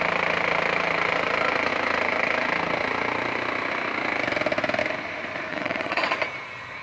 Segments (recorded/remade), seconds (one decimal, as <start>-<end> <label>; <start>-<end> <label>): 0.0-5.5 recorded; 5.5-6.1 remade; 6.1-6.8 recorded